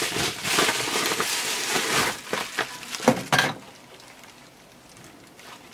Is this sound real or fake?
real